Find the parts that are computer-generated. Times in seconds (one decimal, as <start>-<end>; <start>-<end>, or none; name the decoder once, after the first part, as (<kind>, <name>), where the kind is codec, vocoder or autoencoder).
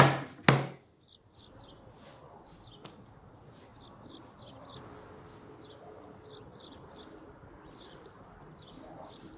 none